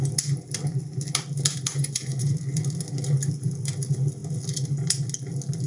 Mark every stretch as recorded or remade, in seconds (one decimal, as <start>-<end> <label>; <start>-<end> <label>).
0.0-1.7 recorded; 1.7-2.3 remade; 2.3-5.7 recorded